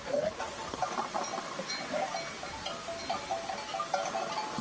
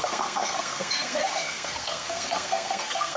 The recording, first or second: first